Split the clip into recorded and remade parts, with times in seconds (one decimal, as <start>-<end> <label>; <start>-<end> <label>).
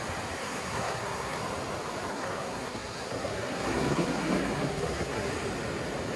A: 0.0-0.4 recorded; 0.4-1.4 remade; 1.4-2.1 recorded; 2.1-5.3 remade; 5.3-6.2 recorded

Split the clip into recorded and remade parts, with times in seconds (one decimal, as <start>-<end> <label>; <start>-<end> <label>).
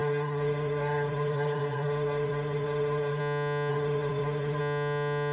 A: 0.0-3.2 remade; 3.2-3.7 recorded; 3.7-4.6 remade; 4.6-5.3 recorded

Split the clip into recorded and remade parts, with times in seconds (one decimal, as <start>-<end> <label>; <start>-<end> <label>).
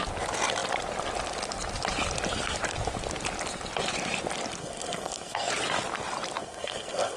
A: 0.0-4.6 recorded; 4.6-5.5 remade; 5.5-6.4 recorded; 6.4-7.2 remade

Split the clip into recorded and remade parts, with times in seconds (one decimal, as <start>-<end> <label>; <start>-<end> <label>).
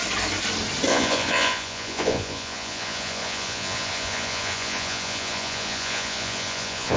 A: 0.0-0.9 recorded; 0.9-7.0 remade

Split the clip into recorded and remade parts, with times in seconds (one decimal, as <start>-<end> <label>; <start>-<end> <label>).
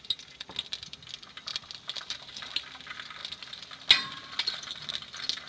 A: 0.0-1.5 recorded; 1.5-2.8 remade; 2.8-5.5 recorded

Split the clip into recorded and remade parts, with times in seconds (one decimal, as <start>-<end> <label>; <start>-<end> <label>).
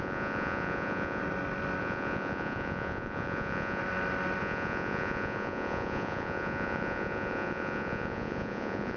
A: 0.0-1.2 remade; 1.2-1.8 recorded; 1.8-3.8 remade; 3.8-4.4 recorded; 4.4-9.0 remade